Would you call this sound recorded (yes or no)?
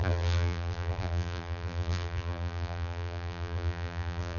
no